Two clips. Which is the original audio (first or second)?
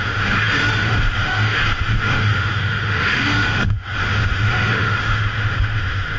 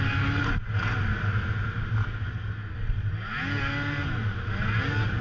second